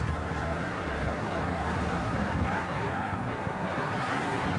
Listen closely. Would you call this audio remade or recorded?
remade